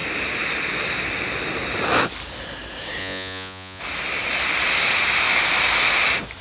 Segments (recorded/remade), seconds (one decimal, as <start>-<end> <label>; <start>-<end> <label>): 0.0-3.0 recorded; 3.0-3.8 remade; 3.8-6.4 recorded